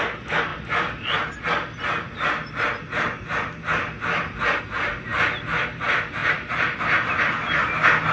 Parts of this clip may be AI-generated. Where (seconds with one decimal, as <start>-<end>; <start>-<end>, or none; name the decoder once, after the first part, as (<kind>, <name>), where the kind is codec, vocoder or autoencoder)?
0.5-4.6 (vocoder, BigVGAN v2); 6.2-6.8